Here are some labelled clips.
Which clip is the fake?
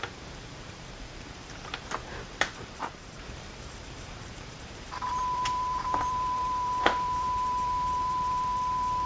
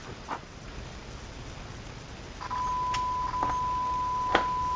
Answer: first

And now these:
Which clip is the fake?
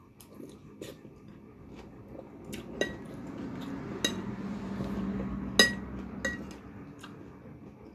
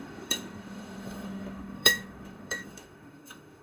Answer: second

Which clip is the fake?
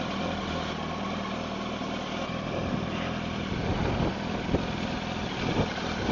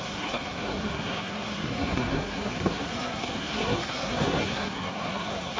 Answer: second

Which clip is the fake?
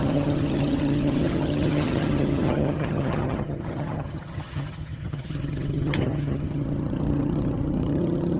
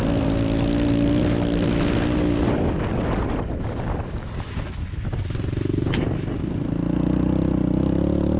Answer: first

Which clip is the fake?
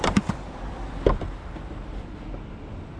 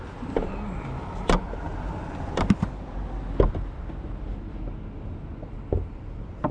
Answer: first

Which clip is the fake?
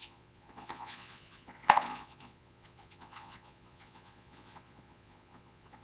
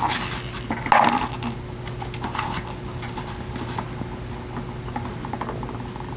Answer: first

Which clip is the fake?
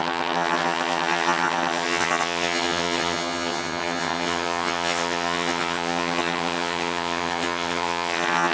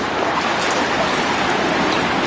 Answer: first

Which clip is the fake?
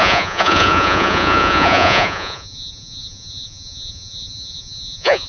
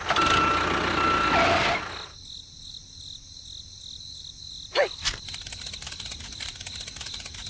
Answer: first